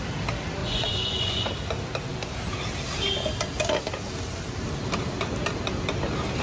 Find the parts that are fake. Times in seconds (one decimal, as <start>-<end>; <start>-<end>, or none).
0.6-1.5